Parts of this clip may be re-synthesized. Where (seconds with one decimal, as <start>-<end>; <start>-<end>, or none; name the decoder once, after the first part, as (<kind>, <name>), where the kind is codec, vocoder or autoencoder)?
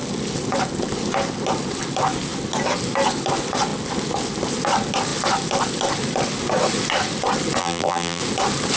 7.6-8.2 (vocoder, BigVGAN v2)